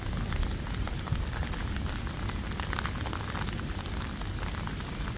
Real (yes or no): yes